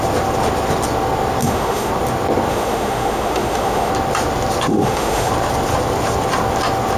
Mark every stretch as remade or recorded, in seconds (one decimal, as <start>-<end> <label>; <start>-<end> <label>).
0.0-1.4 recorded; 1.4-1.9 remade; 1.9-2.5 recorded; 2.5-3.9 remade; 3.9-4.7 recorded; 4.7-5.3 remade; 5.3-7.0 recorded